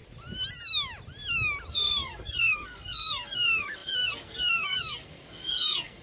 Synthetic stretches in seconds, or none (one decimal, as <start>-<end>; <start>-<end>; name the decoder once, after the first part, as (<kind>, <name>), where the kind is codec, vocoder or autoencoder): 1.7-6.0 (codec, SNAC)